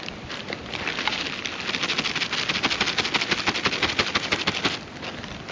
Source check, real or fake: real